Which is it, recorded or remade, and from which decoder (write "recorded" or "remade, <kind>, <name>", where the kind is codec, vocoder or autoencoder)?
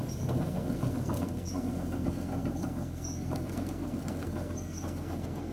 remade, codec, SNAC